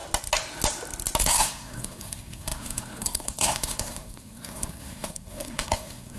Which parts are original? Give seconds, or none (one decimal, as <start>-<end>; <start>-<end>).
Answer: 0.0-1.2